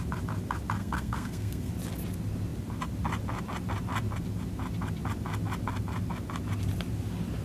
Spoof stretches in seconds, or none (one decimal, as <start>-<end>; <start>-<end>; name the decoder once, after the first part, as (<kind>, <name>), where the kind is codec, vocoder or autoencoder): 0.8-1.7 (codec, SNAC)